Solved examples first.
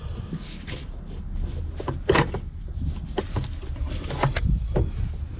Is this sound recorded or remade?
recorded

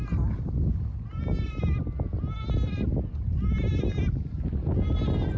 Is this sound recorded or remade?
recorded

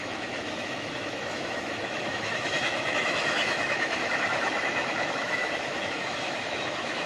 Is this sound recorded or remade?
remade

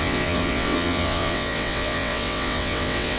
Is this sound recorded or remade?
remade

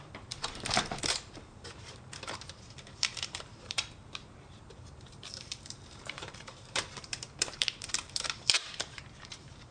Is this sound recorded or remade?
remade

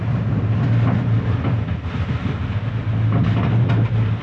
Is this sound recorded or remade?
recorded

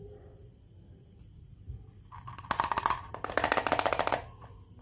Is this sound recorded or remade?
recorded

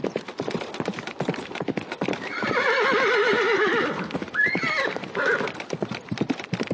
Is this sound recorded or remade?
recorded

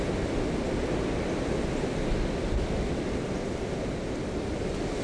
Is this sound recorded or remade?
recorded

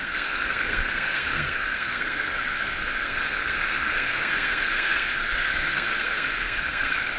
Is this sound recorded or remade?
remade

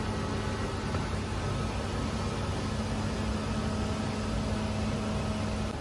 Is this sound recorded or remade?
recorded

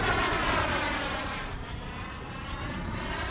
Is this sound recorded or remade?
remade